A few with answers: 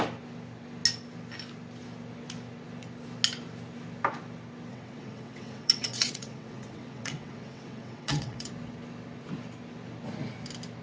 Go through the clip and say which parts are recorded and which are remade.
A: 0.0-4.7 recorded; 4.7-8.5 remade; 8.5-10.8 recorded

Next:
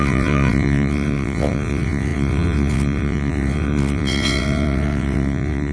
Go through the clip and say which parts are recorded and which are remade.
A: 0.0-5.7 remade

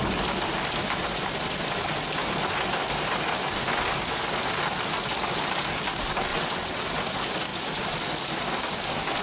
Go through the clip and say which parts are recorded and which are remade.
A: 0.0-6.3 recorded; 6.3-6.8 remade; 6.8-9.2 recorded

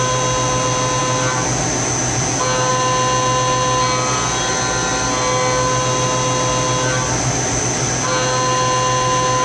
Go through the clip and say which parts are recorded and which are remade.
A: 0.0-9.4 recorded

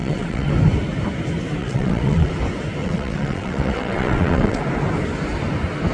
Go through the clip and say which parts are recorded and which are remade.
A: 0.0-0.5 remade; 0.5-1.6 recorded; 1.6-2.3 remade; 2.3-2.8 recorded; 2.8-4.6 remade; 4.6-5.9 recorded

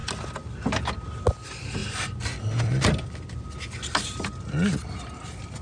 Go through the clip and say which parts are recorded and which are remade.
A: 0.0-5.6 recorded

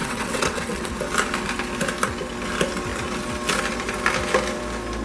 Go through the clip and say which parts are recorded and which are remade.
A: 0.0-0.9 remade; 0.9-5.0 recorded

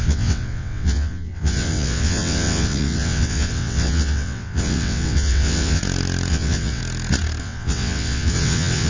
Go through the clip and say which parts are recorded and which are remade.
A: 0.0-5.8 remade; 5.8-6.3 recorded; 6.3-6.8 remade; 6.8-7.4 recorded; 7.4-8.9 remade